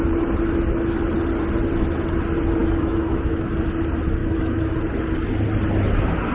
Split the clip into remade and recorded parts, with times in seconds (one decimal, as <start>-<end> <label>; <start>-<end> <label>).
0.0-2.6 recorded; 2.6-3.5 remade; 3.5-4.2 recorded; 4.2-4.7 remade; 4.7-6.3 recorded